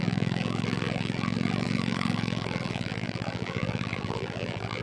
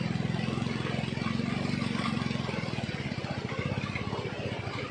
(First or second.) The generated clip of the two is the first